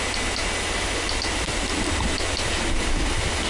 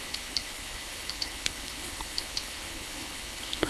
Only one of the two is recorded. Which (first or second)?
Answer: first